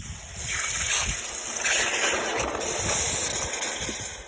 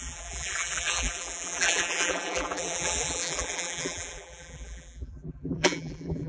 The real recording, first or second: first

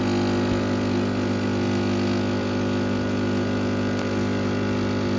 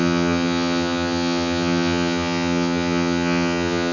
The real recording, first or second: first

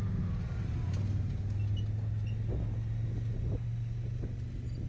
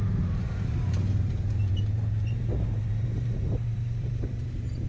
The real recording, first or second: first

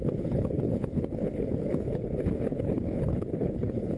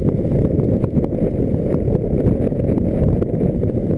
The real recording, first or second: second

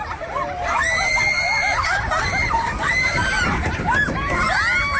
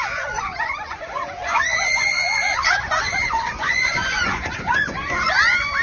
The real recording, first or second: first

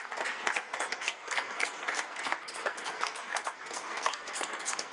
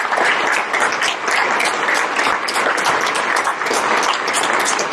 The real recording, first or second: second